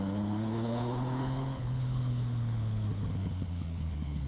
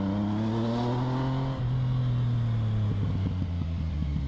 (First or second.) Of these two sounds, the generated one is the first